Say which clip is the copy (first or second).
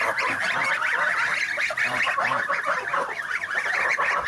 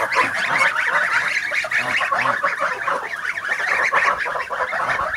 second